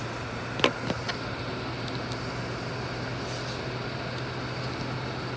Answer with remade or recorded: recorded